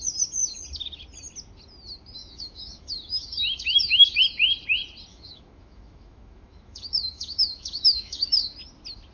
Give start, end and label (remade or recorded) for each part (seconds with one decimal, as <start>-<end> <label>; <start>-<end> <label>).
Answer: 0.0-2.2 recorded; 2.2-4.2 remade; 4.2-5.1 recorded; 5.1-8.5 remade; 8.5-9.1 recorded

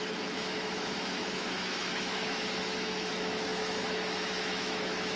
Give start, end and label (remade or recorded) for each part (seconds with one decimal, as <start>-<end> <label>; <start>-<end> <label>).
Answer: 0.0-5.2 remade

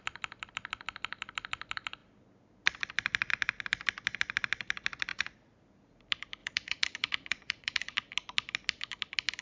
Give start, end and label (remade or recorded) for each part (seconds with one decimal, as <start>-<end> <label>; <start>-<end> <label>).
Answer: 0.0-5.1 recorded; 5.1-6.0 remade; 6.0-6.4 recorded; 6.4-7.9 remade; 7.9-9.4 recorded

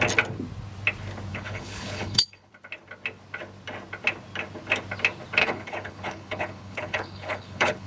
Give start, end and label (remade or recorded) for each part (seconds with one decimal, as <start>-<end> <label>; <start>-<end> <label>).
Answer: 0.0-1.3 recorded; 1.3-2.5 remade; 2.5-5.4 recorded; 5.4-7.9 remade

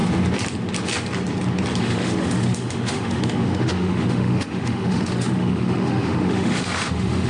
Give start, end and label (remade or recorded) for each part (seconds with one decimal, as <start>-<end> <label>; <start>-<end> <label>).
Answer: 0.0-1.8 recorded; 1.8-7.3 remade

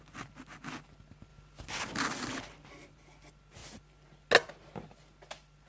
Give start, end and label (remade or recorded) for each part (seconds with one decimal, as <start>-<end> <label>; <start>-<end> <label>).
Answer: 0.0-5.7 recorded

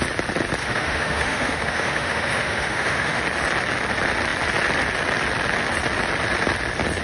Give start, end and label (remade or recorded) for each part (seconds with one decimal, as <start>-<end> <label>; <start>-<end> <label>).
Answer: 0.0-0.6 recorded; 0.6-3.2 remade; 3.2-7.0 recorded